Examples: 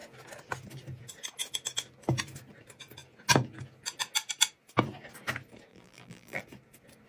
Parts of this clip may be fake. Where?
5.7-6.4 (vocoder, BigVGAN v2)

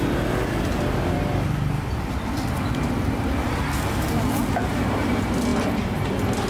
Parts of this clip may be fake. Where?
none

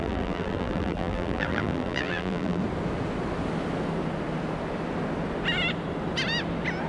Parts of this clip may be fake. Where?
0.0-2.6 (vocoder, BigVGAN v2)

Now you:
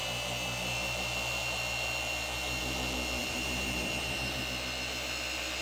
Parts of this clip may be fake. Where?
3.2-4.4 (vocoder, BigVGAN v2)

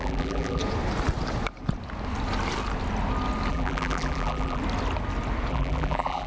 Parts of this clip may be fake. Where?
0.0-0.6 (vocoder, BigVGAN v2); 3.5-4.6; 5.5-6.3

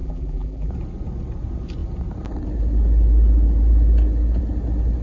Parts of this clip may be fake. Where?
0.0-0.7 (vocoder, BigVGAN v2)